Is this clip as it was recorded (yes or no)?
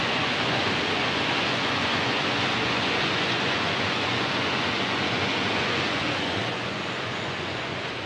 no